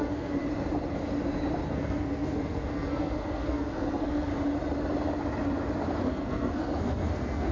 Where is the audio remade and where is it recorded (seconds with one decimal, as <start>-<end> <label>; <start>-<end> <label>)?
0.0-0.4 remade; 0.4-1.7 recorded; 1.7-4.3 remade; 4.3-6.1 recorded; 6.1-7.5 remade